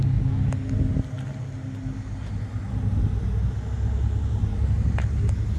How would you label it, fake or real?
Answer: real